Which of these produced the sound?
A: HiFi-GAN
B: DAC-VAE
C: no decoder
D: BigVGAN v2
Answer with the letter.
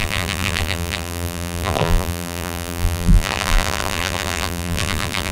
D